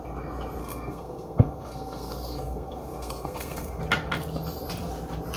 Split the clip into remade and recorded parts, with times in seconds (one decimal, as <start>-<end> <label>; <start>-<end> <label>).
0.0-0.6 recorded; 0.6-3.8 remade; 3.8-5.4 recorded